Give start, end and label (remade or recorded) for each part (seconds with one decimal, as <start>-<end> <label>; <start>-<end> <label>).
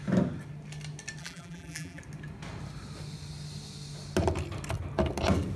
0.0-1.2 recorded; 1.2-2.0 remade; 2.0-5.6 recorded